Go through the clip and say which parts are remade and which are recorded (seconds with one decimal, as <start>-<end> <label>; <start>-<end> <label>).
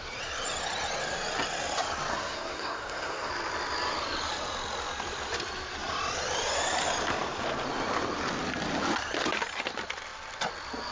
0.0-2.1 recorded; 2.1-3.3 remade; 3.3-10.9 recorded